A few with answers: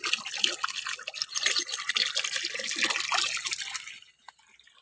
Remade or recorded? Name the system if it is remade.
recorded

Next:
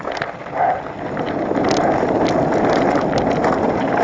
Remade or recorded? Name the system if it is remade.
recorded